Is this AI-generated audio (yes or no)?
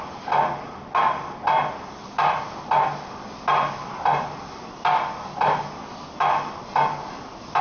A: no